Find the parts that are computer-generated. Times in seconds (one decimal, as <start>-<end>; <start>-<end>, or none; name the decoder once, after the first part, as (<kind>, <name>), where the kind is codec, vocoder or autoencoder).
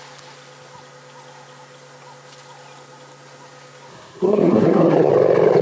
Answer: 3.9-5.1 (codec, SNAC)